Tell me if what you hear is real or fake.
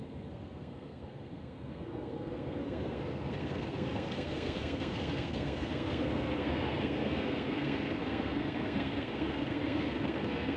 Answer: fake